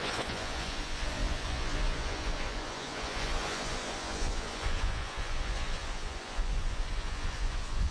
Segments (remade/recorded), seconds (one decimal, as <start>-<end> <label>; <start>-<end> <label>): 0.0-7.9 remade